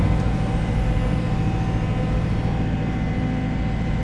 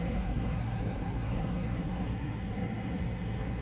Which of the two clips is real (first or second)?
first